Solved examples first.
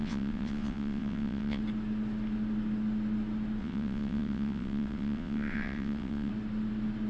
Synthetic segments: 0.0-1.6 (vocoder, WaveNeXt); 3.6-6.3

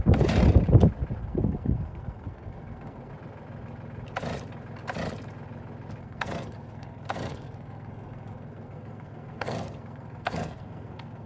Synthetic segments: 1.2-3.1 (codec, SNAC); 6.0-11.3

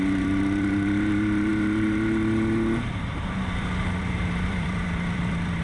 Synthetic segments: 0.0-5.6 (vocoder, BigVGAN v2)

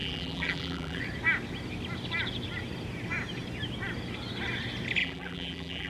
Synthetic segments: 0.0-1.0 (vocoder, BigVGAN v2); 5.0-5.9

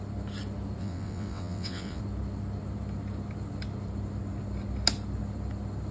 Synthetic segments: 0.8-2.0 (vocoder, WaveNeXt)